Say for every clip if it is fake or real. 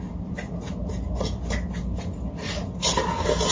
real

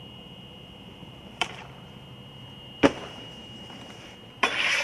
fake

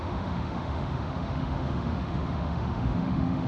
fake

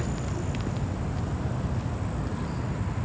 real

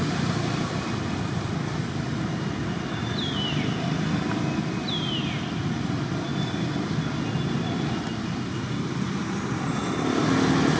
real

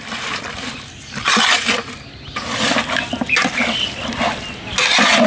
real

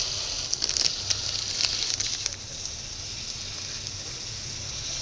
real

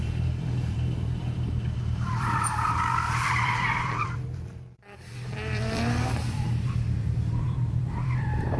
fake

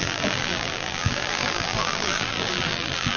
fake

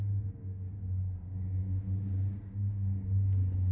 fake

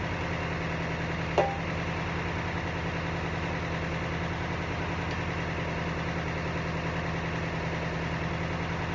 real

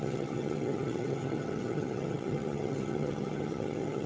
fake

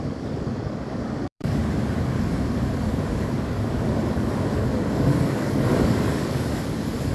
fake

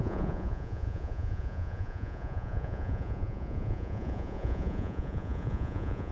fake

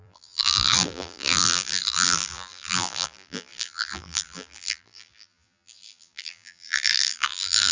fake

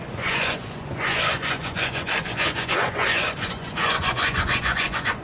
fake